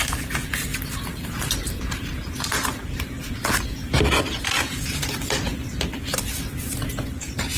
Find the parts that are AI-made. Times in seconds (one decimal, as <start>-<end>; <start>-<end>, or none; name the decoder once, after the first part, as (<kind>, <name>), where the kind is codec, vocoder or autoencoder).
0.7-3.3 (vocoder, BigVGAN v2)

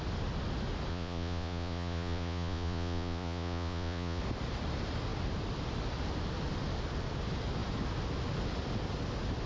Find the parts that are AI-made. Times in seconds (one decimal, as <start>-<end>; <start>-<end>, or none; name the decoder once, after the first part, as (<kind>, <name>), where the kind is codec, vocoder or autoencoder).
0.9-4.2 (vocoder, Vocos)

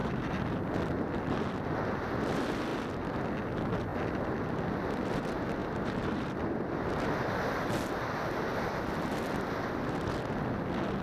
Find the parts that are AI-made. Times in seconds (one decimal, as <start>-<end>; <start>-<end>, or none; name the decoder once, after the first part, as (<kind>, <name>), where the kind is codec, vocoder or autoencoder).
0.0-0.6 (vocoder, BigVGAN v2); 5.6-6.6

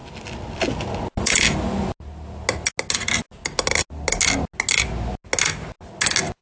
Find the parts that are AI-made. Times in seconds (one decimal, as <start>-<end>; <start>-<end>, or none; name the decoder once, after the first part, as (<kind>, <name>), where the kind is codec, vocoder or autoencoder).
none

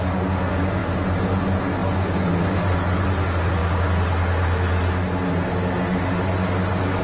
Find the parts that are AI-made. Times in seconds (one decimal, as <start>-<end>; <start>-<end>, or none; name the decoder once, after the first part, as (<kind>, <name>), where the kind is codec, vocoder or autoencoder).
none